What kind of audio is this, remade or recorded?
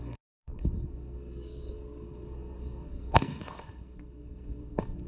remade